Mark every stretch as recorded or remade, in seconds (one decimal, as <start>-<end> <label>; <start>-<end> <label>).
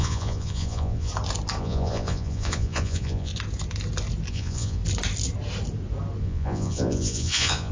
0.0-1.1 remade; 1.1-1.6 recorded; 1.6-3.3 remade; 3.3-4.3 recorded; 4.3-4.8 remade; 4.8-6.2 recorded; 6.2-7.7 remade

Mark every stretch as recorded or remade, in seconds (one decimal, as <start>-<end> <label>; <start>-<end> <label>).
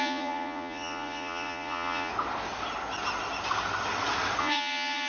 0.0-2.1 remade; 2.1-4.4 recorded; 4.4-5.1 remade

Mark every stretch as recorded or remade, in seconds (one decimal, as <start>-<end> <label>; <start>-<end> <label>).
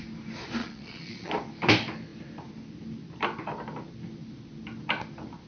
0.0-0.6 recorded; 0.6-1.3 remade; 1.3-5.5 recorded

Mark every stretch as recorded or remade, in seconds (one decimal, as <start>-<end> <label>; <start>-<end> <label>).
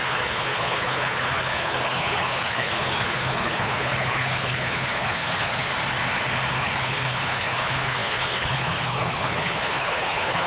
0.0-5.7 remade; 5.7-6.5 recorded; 6.5-10.5 remade